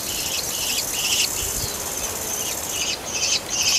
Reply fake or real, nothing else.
real